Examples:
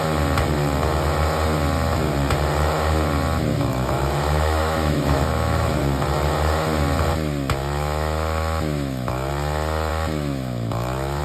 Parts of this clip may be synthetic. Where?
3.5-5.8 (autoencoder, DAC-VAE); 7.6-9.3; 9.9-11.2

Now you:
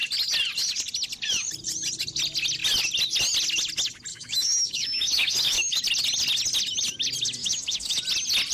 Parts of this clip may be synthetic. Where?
4.1-5.8 (autoencoder, DAC-VAE); 7.4-8.0

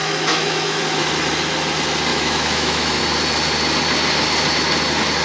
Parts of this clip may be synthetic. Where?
0.0-0.8 (autoencoder, DAC-VAE); 2.1-3.0

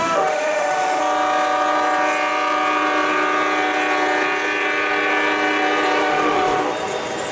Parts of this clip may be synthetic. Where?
0.0-1.0 (autoencoder, DAC-VAE); 6.1-6.6

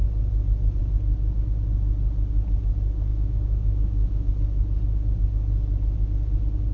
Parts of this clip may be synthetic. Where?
3.1-4.3 (autoencoder, DAC-VAE)

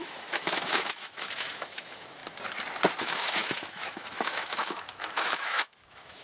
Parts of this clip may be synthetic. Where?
0.0-2.2 (autoencoder, DAC-VAE); 3.0-6.2

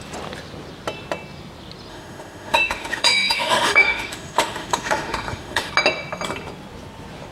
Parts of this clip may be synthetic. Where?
1.9-5.7 (autoencoder, DAC-VAE)

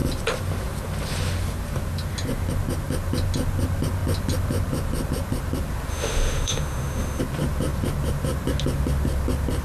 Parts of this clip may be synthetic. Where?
5.9-7.2 (autoencoder, DAC-VAE)